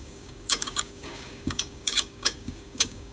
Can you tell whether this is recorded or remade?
remade